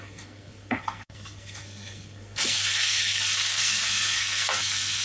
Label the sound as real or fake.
fake